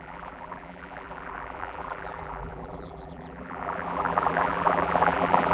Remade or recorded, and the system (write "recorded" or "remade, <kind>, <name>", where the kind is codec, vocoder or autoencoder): remade, vocoder, BigVGAN v2